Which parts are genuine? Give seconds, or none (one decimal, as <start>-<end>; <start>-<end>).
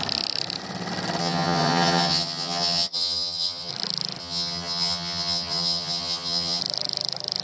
0.0-1.2; 3.7-4.2; 6.6-7.4